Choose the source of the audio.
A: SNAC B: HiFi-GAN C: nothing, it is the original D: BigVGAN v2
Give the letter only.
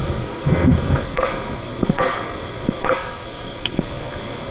A